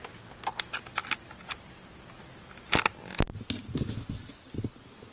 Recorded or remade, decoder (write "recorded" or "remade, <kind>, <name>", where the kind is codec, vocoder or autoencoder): recorded